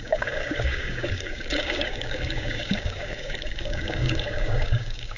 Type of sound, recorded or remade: remade